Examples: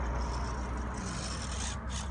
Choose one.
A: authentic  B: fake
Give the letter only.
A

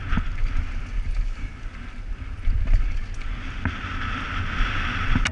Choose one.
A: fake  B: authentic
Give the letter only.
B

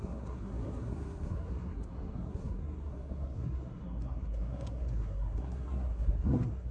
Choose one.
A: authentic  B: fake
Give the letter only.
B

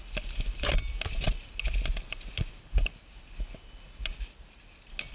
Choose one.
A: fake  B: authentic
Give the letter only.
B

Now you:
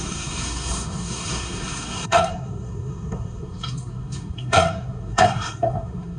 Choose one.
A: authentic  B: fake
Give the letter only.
B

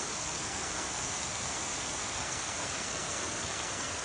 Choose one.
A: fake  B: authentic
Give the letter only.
A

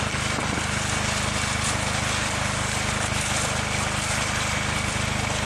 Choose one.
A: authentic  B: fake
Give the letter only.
A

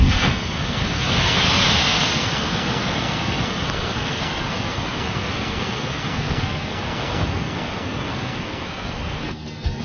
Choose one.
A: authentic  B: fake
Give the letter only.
B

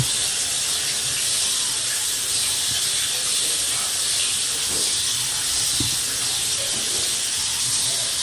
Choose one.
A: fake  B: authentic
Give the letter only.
B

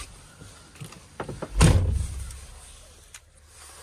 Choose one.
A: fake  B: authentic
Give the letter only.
B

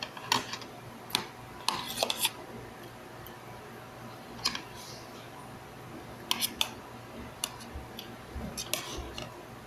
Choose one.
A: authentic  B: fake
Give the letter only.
A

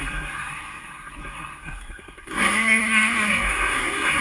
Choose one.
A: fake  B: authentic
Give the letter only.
A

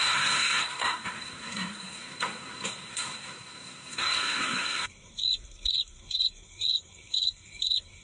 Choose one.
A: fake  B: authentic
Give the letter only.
A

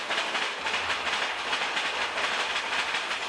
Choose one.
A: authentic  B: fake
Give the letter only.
A